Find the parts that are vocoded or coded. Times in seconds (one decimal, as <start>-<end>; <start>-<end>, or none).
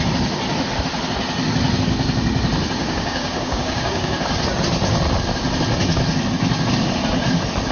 2.8-4.2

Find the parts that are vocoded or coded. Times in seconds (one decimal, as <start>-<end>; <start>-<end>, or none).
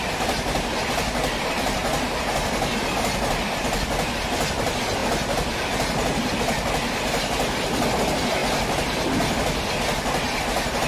0.0-1.8; 4.2-5.0; 7.0-8.4